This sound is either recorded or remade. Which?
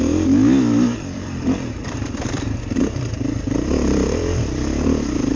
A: remade